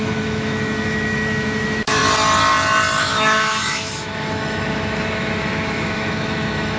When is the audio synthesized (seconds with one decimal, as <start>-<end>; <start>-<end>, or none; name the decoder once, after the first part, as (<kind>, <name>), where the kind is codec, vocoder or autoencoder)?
0.0-2.0 (autoencoder, DAC-VAE); 3.0-6.8